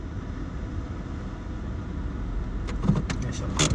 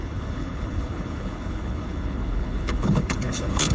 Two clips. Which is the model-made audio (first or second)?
second